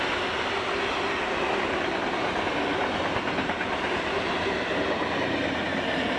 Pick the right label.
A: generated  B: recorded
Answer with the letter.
B